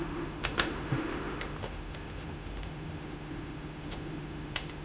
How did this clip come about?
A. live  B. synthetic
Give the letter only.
B